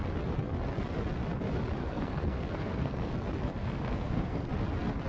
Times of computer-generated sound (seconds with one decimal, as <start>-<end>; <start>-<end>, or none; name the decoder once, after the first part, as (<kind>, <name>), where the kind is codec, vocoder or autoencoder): 1.8-3.1 (codec, SNAC); 3.6-4.5